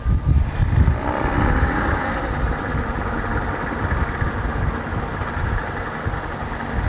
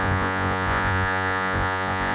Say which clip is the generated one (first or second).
second